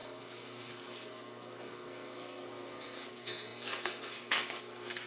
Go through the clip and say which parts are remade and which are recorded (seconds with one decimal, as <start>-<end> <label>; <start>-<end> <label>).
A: 0.0-5.1 remade